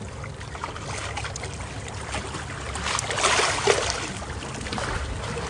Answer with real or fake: real